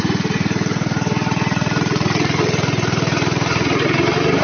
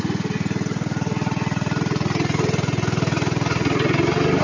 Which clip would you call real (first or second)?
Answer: second